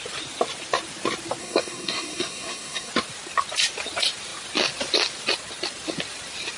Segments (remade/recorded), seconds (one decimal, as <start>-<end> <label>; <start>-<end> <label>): 0.0-1.4 recorded; 1.4-2.9 remade; 2.9-6.6 recorded

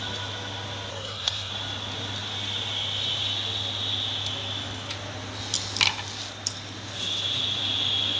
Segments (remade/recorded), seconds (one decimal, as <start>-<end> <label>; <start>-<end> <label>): 0.0-0.9 recorded; 0.9-1.5 remade; 1.5-8.2 recorded

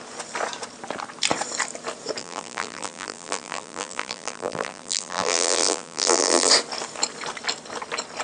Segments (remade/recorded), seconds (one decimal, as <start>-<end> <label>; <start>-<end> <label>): 0.0-2.2 recorded; 2.2-6.5 remade; 6.5-8.2 recorded

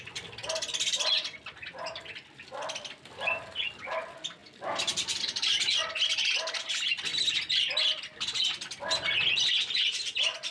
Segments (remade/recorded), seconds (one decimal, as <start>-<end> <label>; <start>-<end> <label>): 0.0-4.4 recorded; 4.4-5.2 remade; 5.2-10.5 recorded

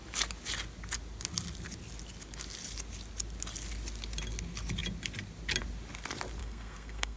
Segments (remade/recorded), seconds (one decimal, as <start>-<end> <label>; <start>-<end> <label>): 0.0-6.4 recorded; 6.4-7.2 remade

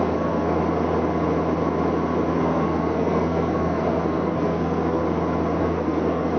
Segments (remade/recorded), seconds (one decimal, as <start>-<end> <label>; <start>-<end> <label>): 0.0-0.6 remade; 0.6-2.3 recorded; 2.3-5.0 remade; 5.0-5.6 recorded; 5.6-6.4 remade

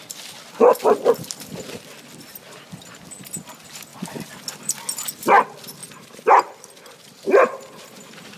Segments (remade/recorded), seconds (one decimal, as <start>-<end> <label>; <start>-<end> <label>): 0.0-3.9 recorded; 3.9-4.7 remade; 4.7-5.8 recorded; 5.8-8.4 remade